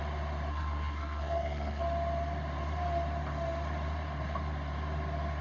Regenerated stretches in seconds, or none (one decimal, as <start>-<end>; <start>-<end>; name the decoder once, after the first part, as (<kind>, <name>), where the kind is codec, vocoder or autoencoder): 0.5-1.8 (codec, SNAC)